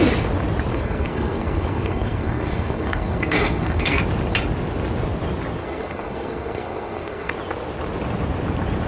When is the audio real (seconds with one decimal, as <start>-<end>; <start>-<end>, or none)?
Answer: 0.0-0.7; 4.0-5.6; 7.3-8.9